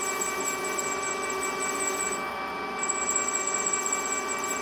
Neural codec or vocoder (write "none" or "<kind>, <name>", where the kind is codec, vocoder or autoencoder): none